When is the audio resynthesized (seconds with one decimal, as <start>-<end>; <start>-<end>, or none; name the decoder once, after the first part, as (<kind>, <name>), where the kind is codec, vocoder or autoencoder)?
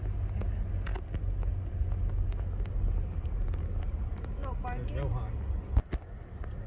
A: none